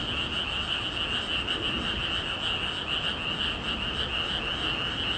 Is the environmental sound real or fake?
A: real